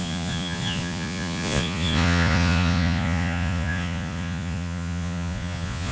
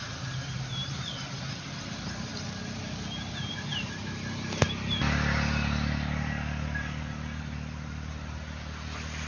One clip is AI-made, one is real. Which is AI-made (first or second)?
first